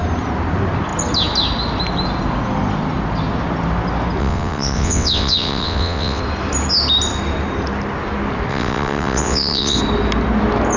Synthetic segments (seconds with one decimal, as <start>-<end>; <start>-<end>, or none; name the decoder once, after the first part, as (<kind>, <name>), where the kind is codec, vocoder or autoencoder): 4.2-6.2 (vocoder, WaveNeXt); 8.5-9.8